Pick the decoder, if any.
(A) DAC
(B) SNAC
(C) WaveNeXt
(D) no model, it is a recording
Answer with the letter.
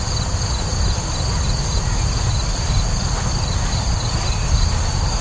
D